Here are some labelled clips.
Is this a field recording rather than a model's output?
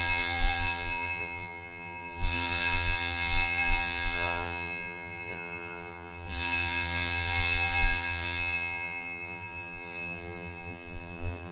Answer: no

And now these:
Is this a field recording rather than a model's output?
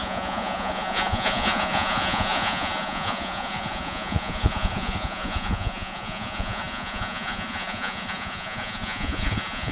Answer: no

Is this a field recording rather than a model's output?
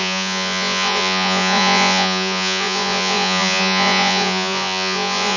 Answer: no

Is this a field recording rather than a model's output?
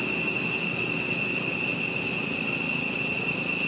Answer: yes